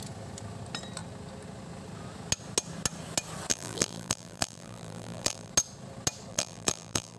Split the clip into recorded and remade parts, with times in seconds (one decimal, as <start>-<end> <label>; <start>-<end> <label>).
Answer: 0.0-3.5 recorded; 3.5-5.5 remade; 5.5-6.3 recorded; 6.3-7.2 remade